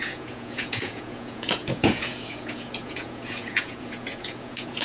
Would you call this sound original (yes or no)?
no